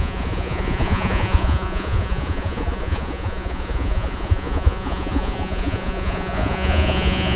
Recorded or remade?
remade